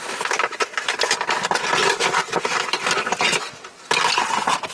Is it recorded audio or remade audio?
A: recorded